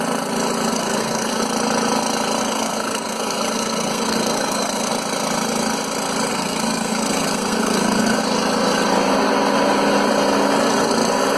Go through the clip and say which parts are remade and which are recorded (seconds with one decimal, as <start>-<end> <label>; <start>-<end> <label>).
0.0-0.7 recorded; 0.7-1.4 remade; 1.4-2.4 recorded; 2.4-4.9 remade; 4.9-6.3 recorded; 6.3-8.2 remade; 8.2-11.4 recorded